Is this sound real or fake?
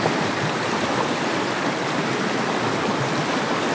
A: real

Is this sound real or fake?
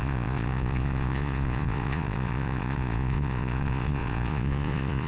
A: fake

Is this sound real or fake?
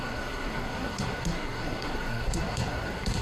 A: fake